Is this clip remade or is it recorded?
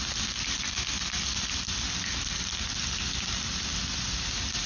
recorded